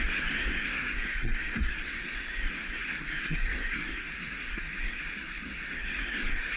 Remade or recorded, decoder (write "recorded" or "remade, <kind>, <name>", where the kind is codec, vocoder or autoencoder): remade, codec, SNAC